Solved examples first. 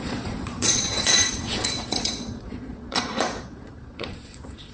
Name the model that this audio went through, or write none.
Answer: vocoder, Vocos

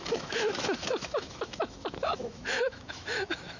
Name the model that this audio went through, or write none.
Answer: autoencoder, DAC-VAE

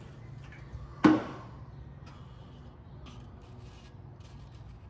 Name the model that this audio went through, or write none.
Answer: none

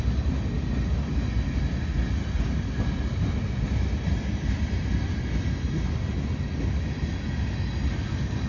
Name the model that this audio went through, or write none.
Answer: none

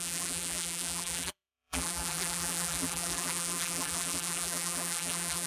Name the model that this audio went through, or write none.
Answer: vocoder, BigVGAN v2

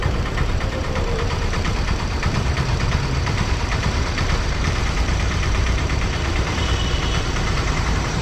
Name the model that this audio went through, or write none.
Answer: vocoder, BigVGAN v2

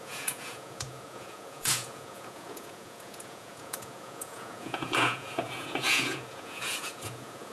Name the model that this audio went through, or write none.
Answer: vocoder, Vocos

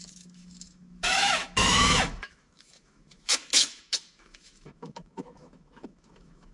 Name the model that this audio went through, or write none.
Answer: autoencoder, DAC-VAE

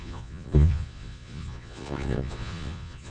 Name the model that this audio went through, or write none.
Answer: vocoder, Vocos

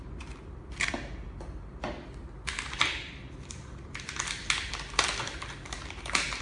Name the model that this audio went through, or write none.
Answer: none